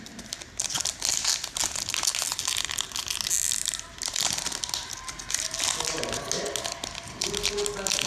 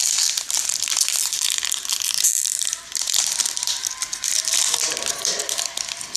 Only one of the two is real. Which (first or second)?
first